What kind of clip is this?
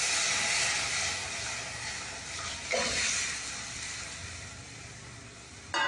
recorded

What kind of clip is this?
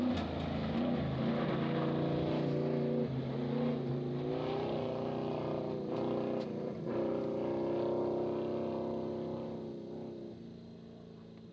recorded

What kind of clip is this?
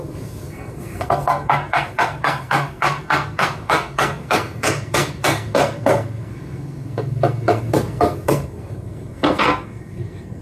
remade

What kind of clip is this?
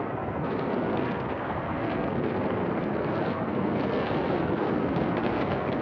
remade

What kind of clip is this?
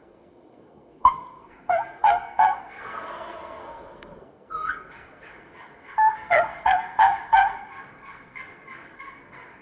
remade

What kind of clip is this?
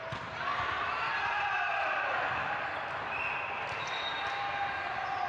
recorded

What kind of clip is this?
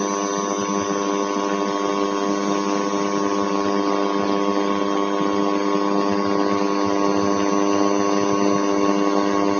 recorded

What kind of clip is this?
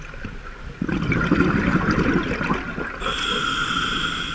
recorded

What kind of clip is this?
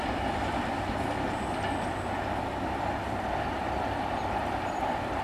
recorded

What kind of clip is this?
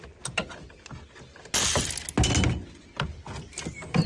recorded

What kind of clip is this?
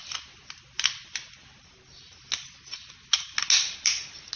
recorded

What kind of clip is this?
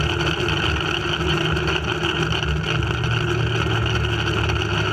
recorded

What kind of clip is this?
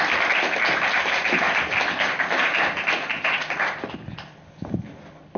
recorded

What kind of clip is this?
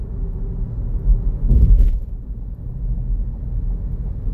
recorded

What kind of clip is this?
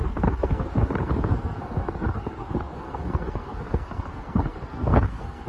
remade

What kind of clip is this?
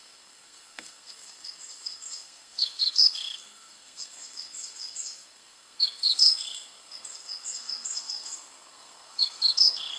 remade